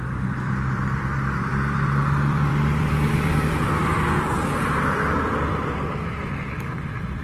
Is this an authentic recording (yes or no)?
no